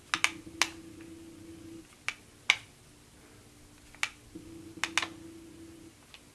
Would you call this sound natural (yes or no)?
yes